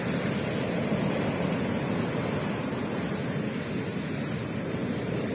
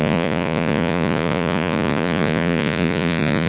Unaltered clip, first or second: first